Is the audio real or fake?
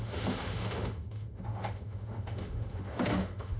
fake